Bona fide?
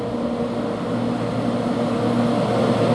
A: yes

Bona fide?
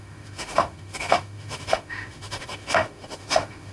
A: no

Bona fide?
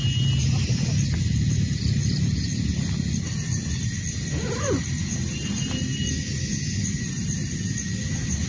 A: yes